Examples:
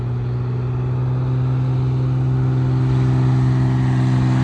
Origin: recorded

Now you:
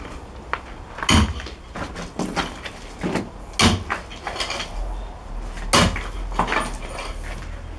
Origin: recorded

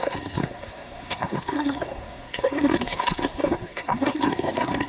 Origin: remade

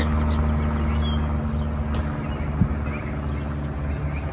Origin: recorded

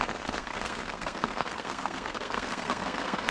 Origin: remade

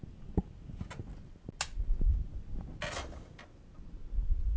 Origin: recorded